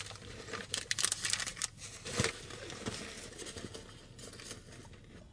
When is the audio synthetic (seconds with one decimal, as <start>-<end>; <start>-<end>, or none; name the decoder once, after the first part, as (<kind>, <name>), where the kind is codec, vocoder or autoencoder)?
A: none